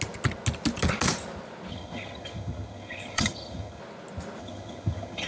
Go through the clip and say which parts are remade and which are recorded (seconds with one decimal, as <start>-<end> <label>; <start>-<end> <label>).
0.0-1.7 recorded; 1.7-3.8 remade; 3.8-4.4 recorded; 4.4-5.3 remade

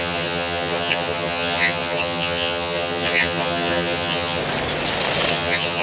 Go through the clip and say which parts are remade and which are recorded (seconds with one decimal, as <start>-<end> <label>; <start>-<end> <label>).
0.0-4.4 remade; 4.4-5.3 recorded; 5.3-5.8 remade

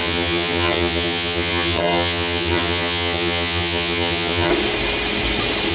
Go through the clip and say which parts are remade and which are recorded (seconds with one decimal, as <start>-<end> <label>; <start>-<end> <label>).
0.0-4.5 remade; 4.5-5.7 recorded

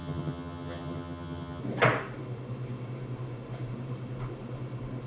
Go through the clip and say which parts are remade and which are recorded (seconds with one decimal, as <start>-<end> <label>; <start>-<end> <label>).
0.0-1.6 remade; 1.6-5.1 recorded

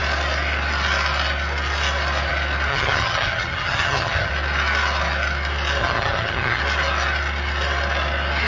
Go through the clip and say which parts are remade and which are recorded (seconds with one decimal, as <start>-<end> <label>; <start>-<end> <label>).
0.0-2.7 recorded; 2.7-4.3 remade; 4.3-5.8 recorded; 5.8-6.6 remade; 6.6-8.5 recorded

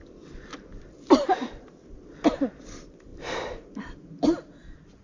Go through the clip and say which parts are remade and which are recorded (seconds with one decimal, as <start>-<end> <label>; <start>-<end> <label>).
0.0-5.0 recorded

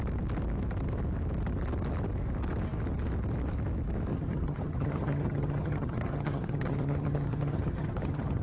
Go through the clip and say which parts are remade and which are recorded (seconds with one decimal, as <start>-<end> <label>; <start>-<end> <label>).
0.0-4.1 recorded; 4.1-8.4 remade